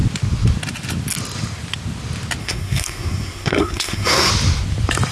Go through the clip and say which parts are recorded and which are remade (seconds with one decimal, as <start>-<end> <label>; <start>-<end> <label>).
0.0-2.4 recorded; 2.4-4.3 remade; 4.3-5.1 recorded